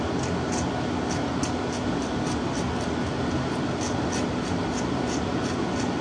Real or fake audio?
real